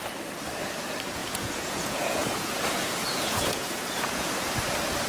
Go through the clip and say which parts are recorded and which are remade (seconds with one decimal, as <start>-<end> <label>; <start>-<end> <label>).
0.0-1.2 recorded; 1.2-4.3 remade; 4.3-5.1 recorded